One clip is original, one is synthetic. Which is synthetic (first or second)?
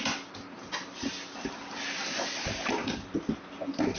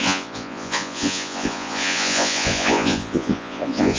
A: second